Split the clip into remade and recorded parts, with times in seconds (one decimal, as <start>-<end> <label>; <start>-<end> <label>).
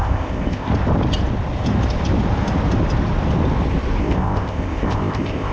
0.0-0.7 remade; 0.7-4.0 recorded; 4.0-5.5 remade